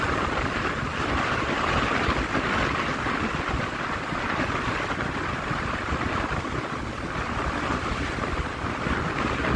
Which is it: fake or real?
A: real